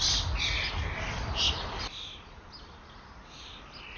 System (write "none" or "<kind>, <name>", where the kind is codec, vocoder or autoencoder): none